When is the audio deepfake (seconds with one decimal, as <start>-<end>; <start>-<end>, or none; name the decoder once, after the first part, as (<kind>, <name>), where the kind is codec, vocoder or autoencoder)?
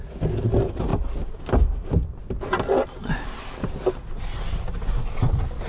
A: none